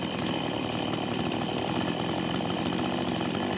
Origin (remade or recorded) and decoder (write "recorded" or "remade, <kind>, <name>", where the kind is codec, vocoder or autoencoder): recorded